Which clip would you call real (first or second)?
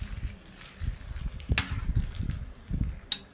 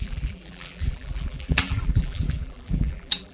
first